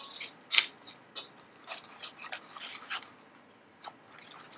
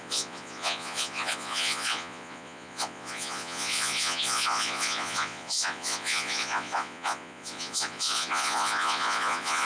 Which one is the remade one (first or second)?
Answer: second